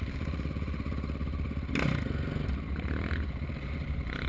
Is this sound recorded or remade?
recorded